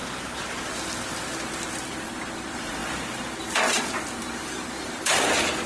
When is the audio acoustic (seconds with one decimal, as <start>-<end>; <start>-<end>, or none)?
0.0-5.7